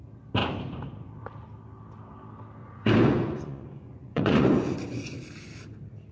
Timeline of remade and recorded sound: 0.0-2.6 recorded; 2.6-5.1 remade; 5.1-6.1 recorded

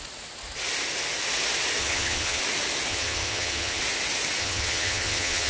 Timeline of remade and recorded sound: 0.0-1.8 recorded; 1.8-2.4 remade; 2.4-2.9 recorded; 2.9-3.8 remade; 3.8-4.4 recorded; 4.4-5.5 remade

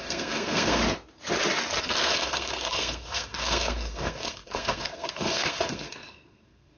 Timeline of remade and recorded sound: 0.0-0.8 remade; 0.8-1.8 recorded; 1.8-6.8 remade